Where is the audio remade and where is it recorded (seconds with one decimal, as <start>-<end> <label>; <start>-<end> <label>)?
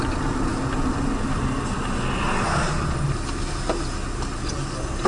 0.0-5.1 recorded